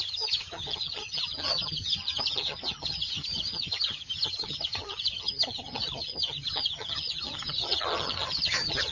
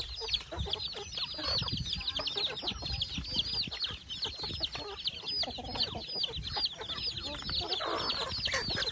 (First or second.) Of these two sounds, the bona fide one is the second